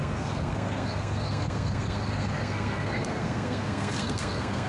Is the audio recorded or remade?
remade